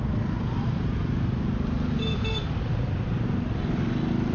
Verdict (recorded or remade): recorded